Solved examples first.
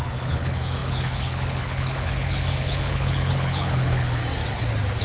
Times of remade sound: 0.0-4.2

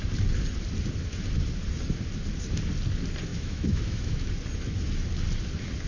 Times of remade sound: 3.3-4.3